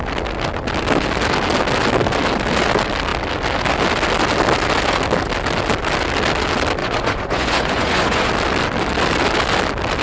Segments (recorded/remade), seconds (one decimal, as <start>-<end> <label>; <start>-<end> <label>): 0.0-6.8 recorded; 6.8-8.3 remade; 8.3-10.0 recorded